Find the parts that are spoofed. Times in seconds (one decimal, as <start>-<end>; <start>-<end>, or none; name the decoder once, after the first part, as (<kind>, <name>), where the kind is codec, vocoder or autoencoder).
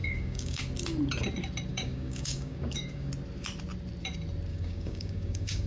0.0-0.6 (codec, DAC); 1.7-3.1; 4.5-5.7